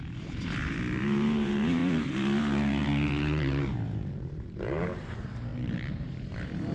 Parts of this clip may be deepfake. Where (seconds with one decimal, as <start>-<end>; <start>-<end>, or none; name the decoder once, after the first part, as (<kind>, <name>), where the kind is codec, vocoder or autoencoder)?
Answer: 0.0-1.8 (vocoder, BigVGAN v2); 2.4-6.7